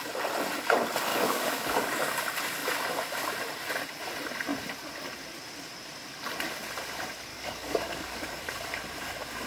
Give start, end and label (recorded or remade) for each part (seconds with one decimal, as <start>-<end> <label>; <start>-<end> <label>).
0.0-1.1 recorded; 1.1-1.9 remade; 1.9-7.3 recorded; 7.3-8.5 remade; 8.5-9.5 recorded